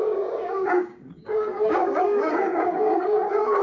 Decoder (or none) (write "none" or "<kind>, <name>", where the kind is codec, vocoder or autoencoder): codec, DAC